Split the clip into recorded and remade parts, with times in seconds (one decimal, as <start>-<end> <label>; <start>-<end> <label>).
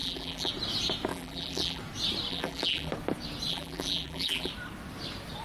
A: 0.0-0.5 remade; 0.5-1.1 recorded; 1.1-1.8 remade; 1.8-2.3 recorded; 2.3-2.9 remade; 2.9-3.5 recorded; 3.5-4.5 remade; 4.5-5.4 recorded